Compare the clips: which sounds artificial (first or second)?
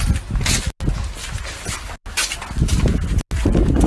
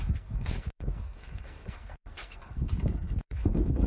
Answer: second